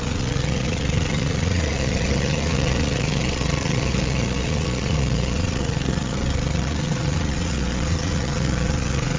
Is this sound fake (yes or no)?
yes